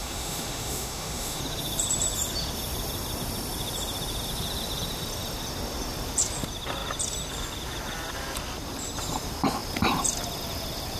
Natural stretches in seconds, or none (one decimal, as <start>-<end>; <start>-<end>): 1.4-11.0